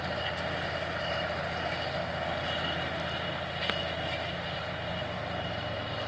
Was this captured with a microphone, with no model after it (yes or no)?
yes